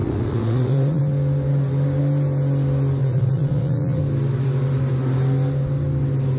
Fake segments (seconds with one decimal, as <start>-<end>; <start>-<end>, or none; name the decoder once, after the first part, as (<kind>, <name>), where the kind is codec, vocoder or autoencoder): 0.0-1.0 (vocoder, Vocos); 3.0-4.0

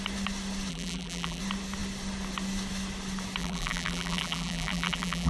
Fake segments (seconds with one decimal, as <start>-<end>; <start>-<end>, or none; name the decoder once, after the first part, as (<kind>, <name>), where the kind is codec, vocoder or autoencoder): 0.7-1.4 (vocoder, BigVGAN v2); 3.4-5.3

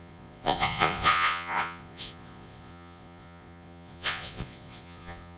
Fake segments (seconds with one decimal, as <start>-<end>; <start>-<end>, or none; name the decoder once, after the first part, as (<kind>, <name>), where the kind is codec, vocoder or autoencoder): 0.0-5.4 (vocoder, Vocos)